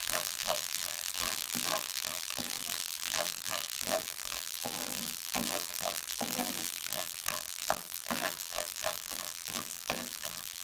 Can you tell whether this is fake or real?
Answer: fake